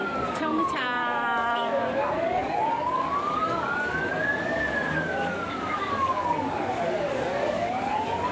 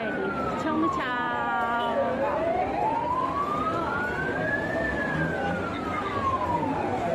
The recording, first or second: second